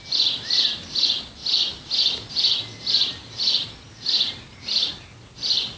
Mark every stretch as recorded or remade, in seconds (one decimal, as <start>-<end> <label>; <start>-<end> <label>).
0.0-5.8 recorded

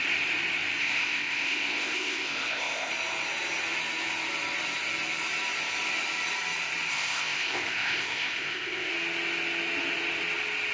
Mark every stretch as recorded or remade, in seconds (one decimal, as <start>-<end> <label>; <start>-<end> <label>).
0.0-0.8 recorded; 0.8-2.9 remade; 2.9-6.9 recorded; 6.9-8.9 remade; 8.9-10.7 recorded

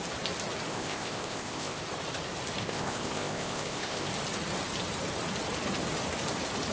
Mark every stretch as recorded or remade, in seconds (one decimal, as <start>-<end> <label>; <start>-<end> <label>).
0.0-0.7 recorded; 0.7-1.8 remade; 1.8-2.6 recorded; 2.6-4.1 remade; 4.1-6.7 recorded

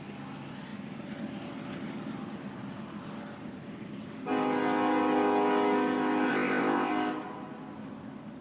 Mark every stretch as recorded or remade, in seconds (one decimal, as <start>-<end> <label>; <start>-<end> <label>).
0.0-6.3 recorded; 6.3-6.9 remade; 6.9-8.4 recorded

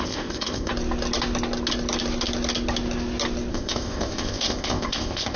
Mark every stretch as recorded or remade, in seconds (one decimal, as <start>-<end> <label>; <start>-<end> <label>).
0.0-0.7 remade; 0.7-3.5 recorded; 3.5-5.4 remade

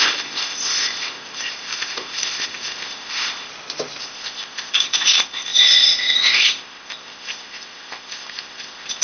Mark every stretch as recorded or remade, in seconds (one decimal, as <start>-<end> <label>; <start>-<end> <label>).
0.0-3.5 remade; 3.5-4.0 recorded; 4.0-9.0 remade

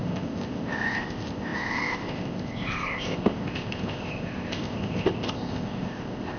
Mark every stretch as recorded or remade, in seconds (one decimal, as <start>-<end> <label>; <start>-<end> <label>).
0.0-6.4 remade

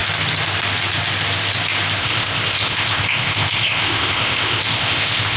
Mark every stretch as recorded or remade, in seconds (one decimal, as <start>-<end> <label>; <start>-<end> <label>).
0.0-2.0 recorded; 2.0-5.4 remade